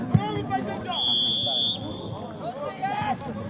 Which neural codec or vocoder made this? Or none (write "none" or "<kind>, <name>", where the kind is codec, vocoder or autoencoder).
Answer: none